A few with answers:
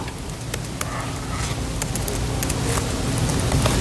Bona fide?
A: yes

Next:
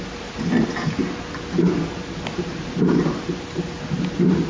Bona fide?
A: yes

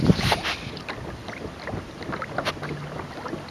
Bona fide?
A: yes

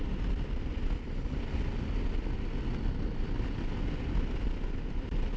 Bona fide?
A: yes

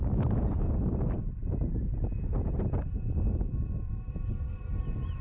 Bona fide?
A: yes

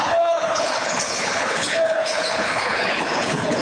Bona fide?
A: no